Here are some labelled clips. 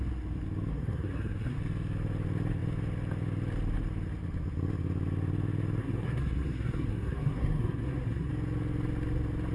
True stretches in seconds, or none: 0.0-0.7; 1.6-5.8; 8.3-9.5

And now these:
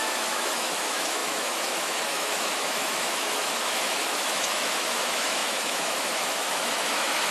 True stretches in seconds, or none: none

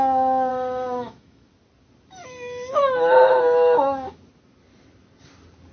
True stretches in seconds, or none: 0.0-0.5; 1.5-2.2; 4.2-5.7

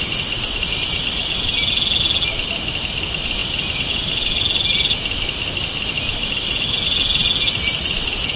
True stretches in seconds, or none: 0.0-8.4

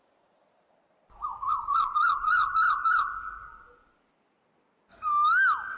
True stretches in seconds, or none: 0.0-5.8

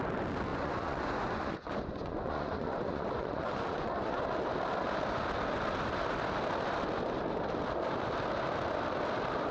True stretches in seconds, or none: 0.0-0.5; 4.2-9.5